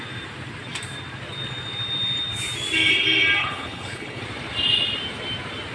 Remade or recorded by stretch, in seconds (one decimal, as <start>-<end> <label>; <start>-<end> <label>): 0.0-3.4 recorded; 3.4-4.2 remade; 4.2-5.7 recorded